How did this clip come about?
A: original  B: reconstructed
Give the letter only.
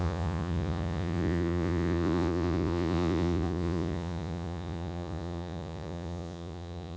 B